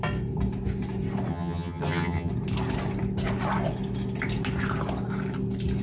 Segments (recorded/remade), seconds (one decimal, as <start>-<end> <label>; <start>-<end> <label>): 0.0-1.3 recorded; 1.3-2.3 remade; 2.3-5.8 recorded